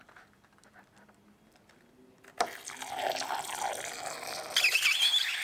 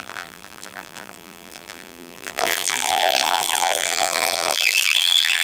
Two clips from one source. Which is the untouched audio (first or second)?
first